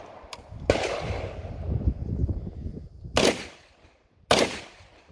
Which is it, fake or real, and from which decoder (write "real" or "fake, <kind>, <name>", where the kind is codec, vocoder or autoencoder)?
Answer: real